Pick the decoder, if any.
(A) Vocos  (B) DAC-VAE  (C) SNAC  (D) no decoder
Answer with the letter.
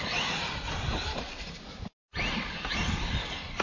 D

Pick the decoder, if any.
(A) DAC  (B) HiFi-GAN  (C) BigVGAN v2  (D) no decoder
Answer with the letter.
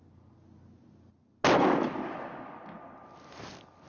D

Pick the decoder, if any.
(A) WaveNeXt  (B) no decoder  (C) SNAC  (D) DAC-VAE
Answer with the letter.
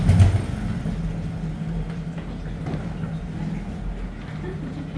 B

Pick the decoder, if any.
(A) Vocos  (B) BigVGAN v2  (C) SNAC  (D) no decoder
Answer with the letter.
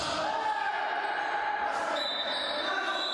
D